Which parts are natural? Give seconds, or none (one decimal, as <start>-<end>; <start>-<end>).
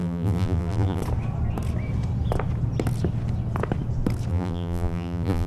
1.0-4.3